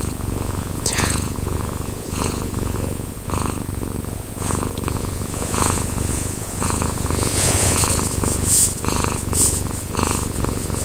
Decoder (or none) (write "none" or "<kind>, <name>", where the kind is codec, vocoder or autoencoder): vocoder, Vocos